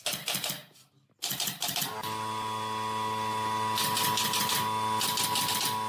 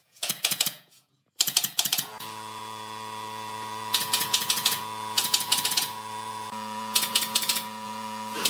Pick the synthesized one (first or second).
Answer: second